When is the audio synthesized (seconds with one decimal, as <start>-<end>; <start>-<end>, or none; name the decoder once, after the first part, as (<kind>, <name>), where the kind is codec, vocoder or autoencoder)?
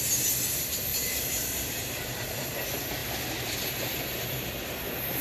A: 0.9-2.5 (vocoder, BigVGAN v2); 3.0-5.2